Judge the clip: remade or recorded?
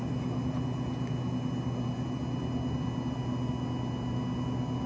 recorded